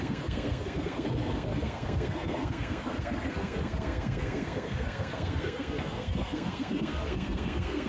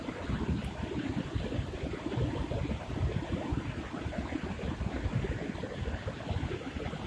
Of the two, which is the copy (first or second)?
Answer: first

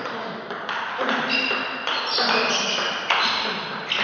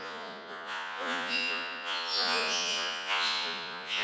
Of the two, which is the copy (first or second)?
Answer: second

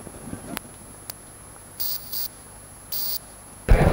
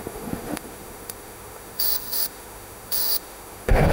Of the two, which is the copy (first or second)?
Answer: second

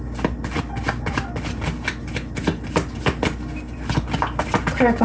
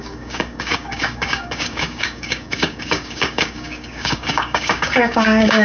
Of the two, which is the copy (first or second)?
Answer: second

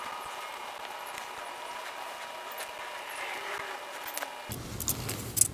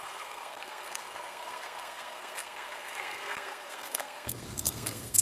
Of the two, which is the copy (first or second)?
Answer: second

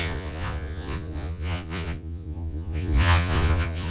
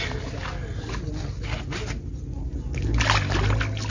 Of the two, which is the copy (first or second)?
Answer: first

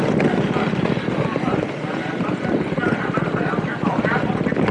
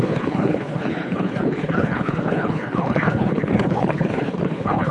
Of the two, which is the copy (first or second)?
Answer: second